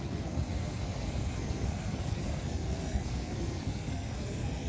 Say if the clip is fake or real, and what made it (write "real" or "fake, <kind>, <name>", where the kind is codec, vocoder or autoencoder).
fake, codec, SNAC